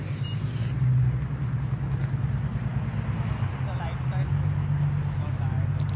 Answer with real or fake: real